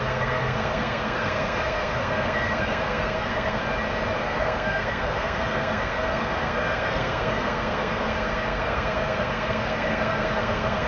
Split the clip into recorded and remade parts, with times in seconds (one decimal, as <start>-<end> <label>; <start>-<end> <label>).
0.0-3.6 remade; 3.6-4.2 recorded; 4.2-10.9 remade